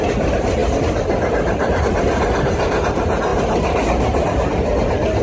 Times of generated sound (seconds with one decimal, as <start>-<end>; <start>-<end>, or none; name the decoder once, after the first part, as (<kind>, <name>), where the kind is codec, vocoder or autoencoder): none